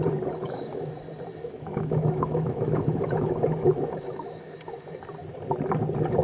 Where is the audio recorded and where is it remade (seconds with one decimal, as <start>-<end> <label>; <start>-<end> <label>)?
0.0-0.4 recorded; 0.4-0.9 remade; 0.9-1.3 recorded; 1.3-5.0 remade; 5.0-6.2 recorded